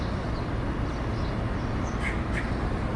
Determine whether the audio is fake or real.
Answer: real